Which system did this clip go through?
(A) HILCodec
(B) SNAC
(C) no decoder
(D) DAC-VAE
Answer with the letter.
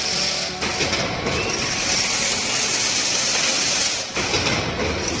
C